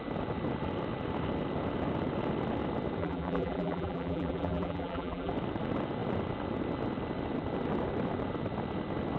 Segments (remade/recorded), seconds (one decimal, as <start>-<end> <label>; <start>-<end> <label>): 0.0-3.0 recorded; 3.0-5.3 remade; 5.3-9.2 recorded